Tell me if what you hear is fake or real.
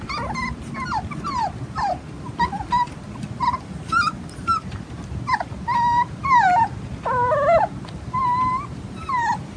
real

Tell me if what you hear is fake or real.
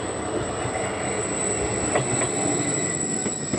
real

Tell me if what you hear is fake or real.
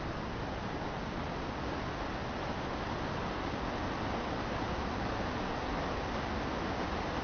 real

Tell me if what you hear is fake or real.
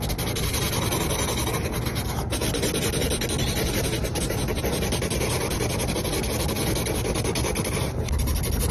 real